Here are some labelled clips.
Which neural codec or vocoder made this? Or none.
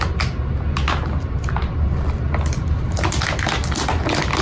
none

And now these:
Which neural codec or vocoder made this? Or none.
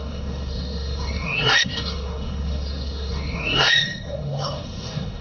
codec, SNAC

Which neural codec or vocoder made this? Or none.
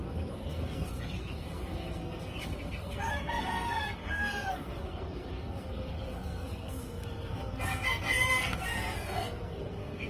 codec, SNAC